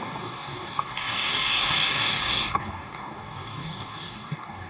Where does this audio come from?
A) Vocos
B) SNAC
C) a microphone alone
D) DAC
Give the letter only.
D